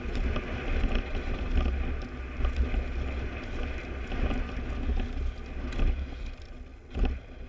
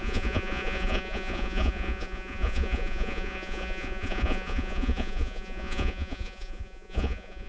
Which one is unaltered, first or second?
first